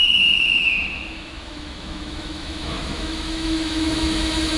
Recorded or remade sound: remade